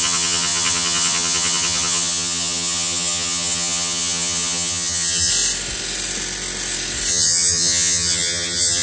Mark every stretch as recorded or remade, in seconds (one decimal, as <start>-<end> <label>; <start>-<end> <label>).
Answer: 0.0-5.3 remade; 5.3-7.1 recorded; 7.1-8.8 remade